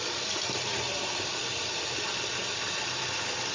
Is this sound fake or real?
real